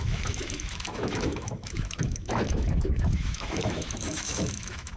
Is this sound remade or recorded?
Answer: remade